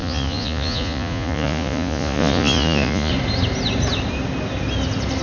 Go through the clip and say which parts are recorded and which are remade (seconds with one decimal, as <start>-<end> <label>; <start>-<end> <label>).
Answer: 0.0-3.1 remade; 3.1-5.2 recorded